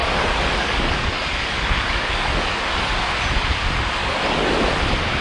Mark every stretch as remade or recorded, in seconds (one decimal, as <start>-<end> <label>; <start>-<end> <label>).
0.0-3.1 remade; 3.1-4.0 recorded; 4.0-4.5 remade; 4.5-5.2 recorded